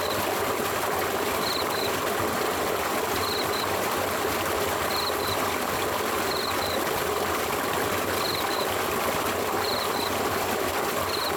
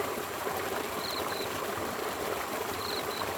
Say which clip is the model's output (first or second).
second